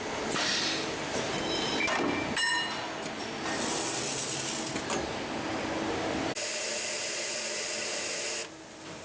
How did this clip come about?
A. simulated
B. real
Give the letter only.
B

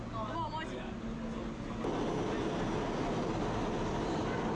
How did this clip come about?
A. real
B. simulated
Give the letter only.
A